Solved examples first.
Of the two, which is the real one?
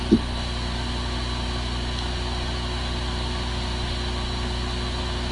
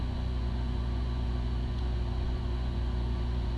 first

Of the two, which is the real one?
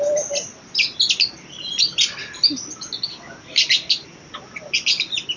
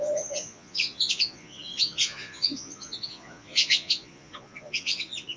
first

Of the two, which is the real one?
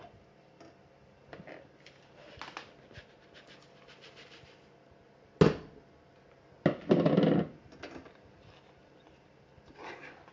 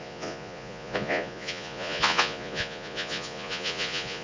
first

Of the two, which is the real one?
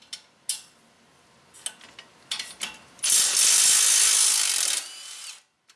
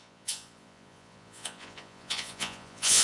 first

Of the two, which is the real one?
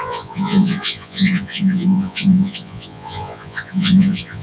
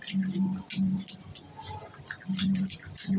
second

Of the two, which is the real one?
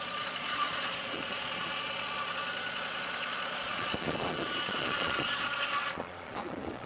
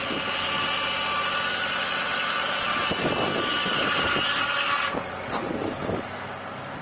second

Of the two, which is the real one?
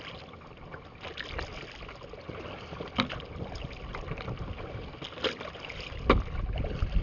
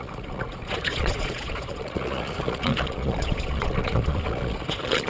first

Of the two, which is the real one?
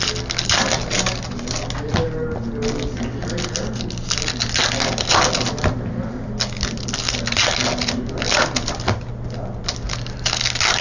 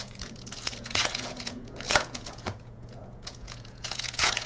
first